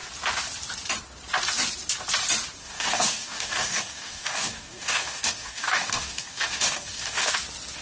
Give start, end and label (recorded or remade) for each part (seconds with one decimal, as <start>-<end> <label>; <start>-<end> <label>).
0.0-2.6 recorded; 2.6-7.3 remade; 7.3-7.8 recorded

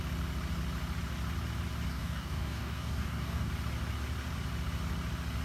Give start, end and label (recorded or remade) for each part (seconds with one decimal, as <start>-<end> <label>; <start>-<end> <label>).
0.0-1.9 recorded; 1.9-3.5 remade; 3.5-5.4 recorded

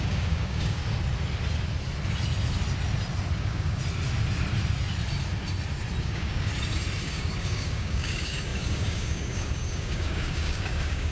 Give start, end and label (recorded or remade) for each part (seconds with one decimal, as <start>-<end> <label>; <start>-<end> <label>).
0.0-0.8 remade; 0.8-3.4 recorded; 3.4-3.8 remade; 3.8-6.0 recorded; 6.0-6.5 remade; 6.5-7.0 recorded; 7.0-11.1 remade